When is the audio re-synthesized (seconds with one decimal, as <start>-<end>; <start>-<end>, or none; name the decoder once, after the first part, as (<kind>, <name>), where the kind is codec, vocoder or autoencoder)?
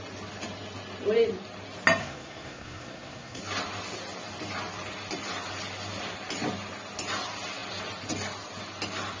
2.0-3.4 (codec, SNAC)